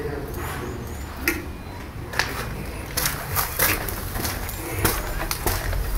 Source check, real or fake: real